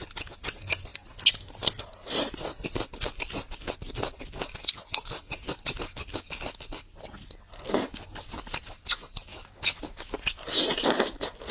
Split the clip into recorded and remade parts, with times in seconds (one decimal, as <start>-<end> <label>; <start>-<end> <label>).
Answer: 0.0-9.3 recorded; 9.3-10.1 remade; 10.1-11.5 recorded